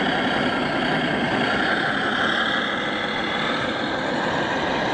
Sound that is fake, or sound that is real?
real